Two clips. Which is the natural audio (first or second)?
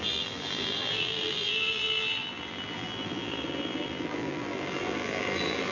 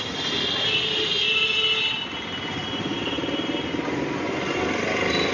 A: second